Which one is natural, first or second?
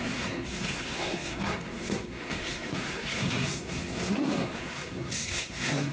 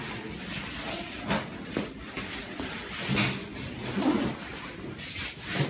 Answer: second